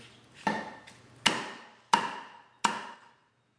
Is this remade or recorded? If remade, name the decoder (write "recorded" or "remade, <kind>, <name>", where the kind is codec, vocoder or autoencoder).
recorded